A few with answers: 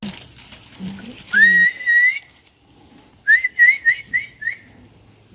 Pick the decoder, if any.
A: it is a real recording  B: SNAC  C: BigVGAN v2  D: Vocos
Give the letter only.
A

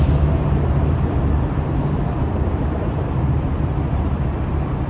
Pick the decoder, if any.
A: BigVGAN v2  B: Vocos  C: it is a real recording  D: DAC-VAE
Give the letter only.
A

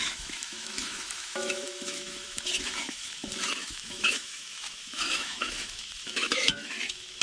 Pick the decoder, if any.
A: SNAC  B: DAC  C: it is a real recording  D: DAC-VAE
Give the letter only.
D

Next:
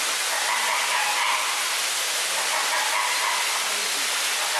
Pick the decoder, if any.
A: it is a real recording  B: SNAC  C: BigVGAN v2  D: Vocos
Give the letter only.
A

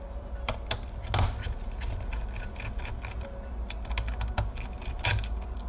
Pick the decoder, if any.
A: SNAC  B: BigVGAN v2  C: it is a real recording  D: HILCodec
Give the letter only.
C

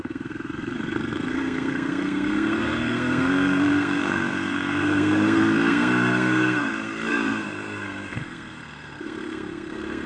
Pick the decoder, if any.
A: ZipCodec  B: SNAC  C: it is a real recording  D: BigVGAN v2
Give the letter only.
B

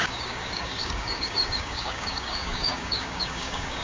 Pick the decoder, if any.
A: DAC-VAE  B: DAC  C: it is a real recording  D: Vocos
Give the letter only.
B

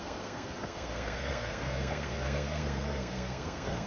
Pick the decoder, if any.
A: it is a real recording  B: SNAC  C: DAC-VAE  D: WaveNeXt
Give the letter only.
B